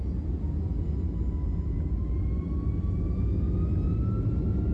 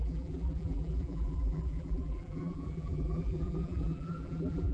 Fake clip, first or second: second